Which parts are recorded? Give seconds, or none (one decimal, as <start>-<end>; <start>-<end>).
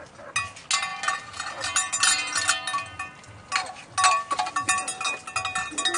0.0-6.0